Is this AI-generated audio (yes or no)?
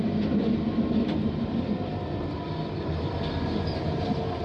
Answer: no